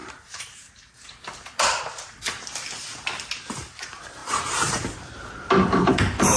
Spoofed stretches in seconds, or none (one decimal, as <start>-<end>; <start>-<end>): 0.0-1.8; 4.2-5.1